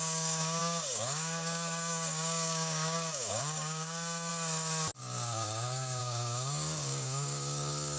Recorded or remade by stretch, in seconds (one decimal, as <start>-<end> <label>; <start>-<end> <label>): 0.0-4.3 remade; 4.3-5.0 recorded; 5.0-8.0 remade